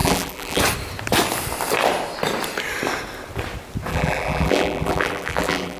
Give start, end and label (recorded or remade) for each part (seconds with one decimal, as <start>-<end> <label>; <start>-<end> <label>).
0.0-0.6 remade; 0.6-3.9 recorded; 3.9-5.8 remade